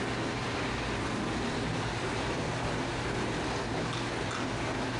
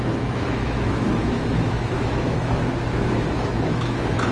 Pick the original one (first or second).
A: first